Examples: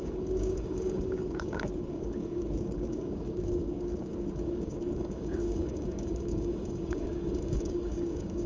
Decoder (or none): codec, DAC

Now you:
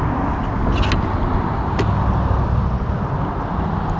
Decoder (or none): none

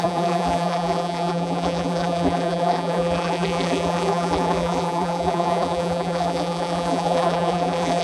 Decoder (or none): vocoder, BigVGAN v2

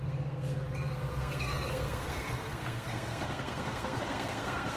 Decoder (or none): codec, SNAC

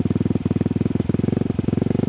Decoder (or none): none